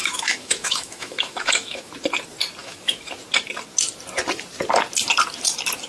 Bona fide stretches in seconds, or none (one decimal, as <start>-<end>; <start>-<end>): 1.9-2.6; 3.1-5.9